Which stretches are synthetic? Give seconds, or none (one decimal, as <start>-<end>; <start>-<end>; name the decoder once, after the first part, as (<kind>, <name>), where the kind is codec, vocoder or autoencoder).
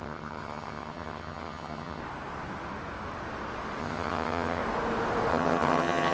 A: 0.0-2.0 (vocoder, HiFi-GAN); 3.8-4.6; 5.3-6.1